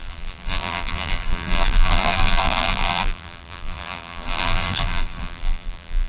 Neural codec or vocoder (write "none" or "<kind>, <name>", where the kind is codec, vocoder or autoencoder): vocoder, BigVGAN v2